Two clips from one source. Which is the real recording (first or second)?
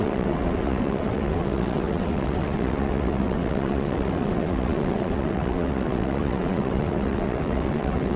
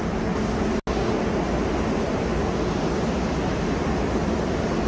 second